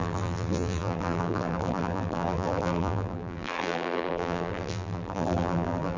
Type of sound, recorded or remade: remade